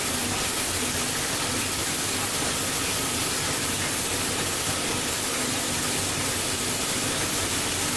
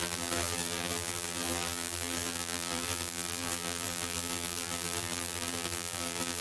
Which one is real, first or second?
first